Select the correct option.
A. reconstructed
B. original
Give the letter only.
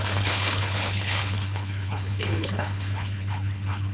A